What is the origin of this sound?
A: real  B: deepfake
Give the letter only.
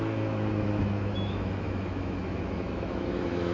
B